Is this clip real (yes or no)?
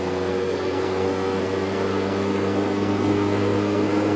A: no